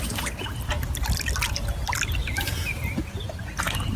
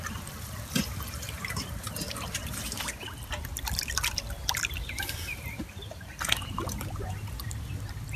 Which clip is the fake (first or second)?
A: second